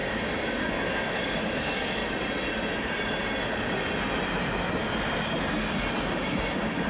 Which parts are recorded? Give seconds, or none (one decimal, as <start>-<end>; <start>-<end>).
2.0-6.1